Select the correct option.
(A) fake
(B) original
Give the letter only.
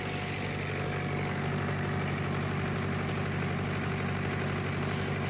B